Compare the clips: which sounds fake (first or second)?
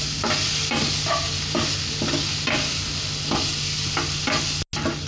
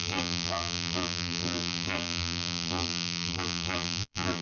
second